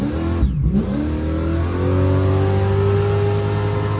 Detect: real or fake real